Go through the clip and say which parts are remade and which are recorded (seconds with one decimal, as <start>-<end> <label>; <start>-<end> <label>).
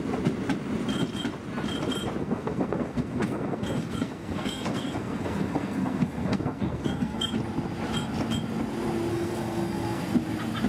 0.0-2.2 recorded; 2.2-7.3 remade; 7.3-9.1 recorded; 9.1-10.0 remade; 10.0-10.7 recorded